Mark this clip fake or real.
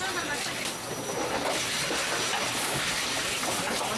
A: real